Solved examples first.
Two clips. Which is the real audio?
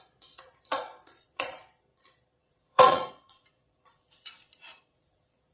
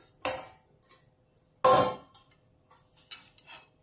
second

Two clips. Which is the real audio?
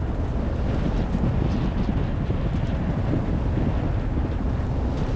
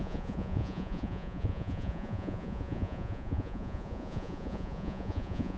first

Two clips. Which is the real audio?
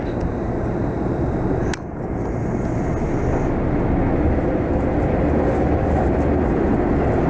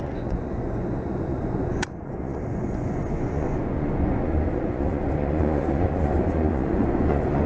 first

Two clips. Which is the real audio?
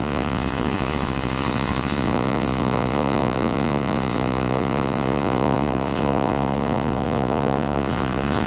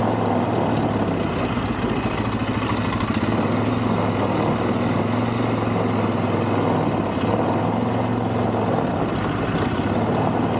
second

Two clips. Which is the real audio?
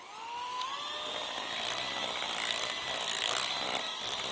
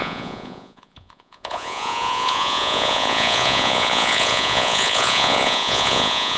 first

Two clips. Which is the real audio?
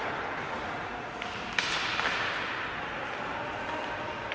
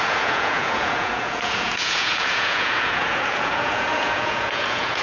first